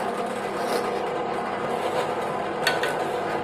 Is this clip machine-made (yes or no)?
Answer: no